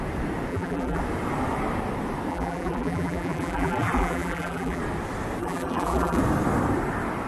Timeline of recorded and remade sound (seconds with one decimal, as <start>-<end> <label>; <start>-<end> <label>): 0.0-0.5 recorded; 0.5-1.0 remade; 1.0-2.3 recorded; 2.3-4.8 remade; 4.8-5.4 recorded; 5.4-6.2 remade; 6.2-7.3 recorded

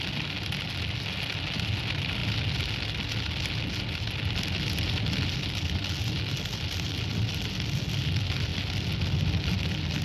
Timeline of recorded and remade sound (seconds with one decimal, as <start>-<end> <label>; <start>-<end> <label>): 0.0-10.0 recorded

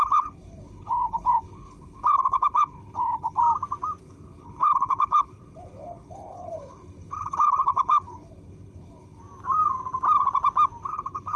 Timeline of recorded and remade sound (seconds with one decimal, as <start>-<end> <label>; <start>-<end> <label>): 0.0-3.4 remade; 3.4-4.0 recorded; 4.0-9.2 remade; 9.2-10.8 recorded; 10.8-11.4 remade

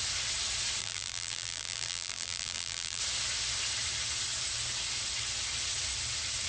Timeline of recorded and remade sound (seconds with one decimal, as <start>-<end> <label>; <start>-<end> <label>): 0.0-0.8 recorded; 0.8-3.0 remade; 3.0-6.5 recorded

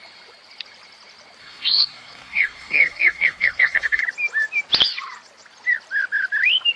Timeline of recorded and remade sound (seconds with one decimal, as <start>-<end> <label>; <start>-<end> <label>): 0.0-1.4 recorded; 1.4-4.0 remade; 4.0-6.8 recorded

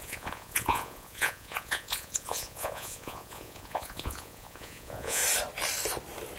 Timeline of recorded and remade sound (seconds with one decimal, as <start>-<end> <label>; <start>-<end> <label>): 0.0-5.2 remade; 5.2-6.4 recorded

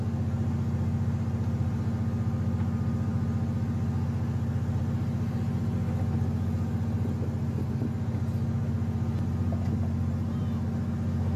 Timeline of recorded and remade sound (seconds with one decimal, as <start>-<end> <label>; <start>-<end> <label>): 0.0-11.4 recorded